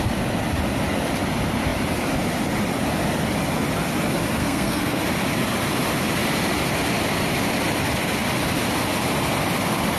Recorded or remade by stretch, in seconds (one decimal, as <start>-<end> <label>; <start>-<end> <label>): 0.0-4.4 recorded; 4.4-5.0 remade; 5.0-10.0 recorded